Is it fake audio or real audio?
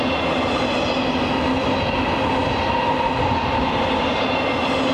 real